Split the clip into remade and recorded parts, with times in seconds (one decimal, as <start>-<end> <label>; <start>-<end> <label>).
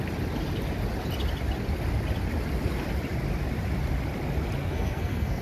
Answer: 0.0-4.6 recorded; 4.6-5.4 remade